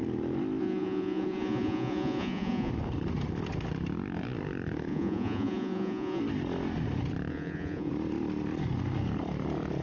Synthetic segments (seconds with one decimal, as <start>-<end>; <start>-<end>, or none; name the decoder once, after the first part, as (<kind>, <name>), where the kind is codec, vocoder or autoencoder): 0.6-2.7 (vocoder, Vocos); 4.9-6.2; 7.3-7.9